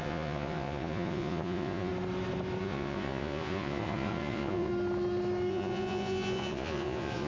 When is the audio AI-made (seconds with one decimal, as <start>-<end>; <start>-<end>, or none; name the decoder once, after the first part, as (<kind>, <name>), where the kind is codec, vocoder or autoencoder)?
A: 0.0-1.9 (vocoder, Vocos); 2.6-4.7; 5.5-7.3